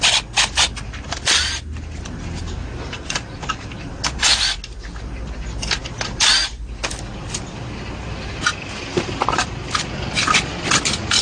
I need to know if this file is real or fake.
real